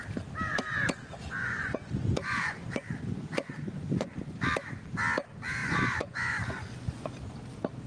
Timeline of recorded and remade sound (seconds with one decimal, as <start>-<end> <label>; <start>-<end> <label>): 0.0-1.4 recorded; 1.4-4.1 remade; 4.1-5.6 recorded; 5.6-7.1 remade; 7.1-7.9 recorded